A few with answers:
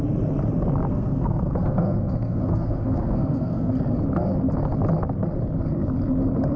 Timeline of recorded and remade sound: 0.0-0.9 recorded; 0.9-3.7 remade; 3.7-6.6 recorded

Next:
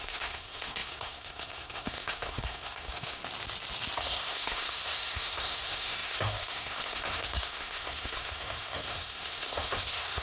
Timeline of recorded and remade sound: 0.0-3.2 remade; 3.2-4.0 recorded; 4.0-10.2 remade

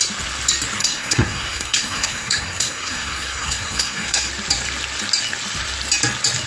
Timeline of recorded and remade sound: 0.0-0.8 recorded; 0.8-4.3 remade; 4.3-6.5 recorded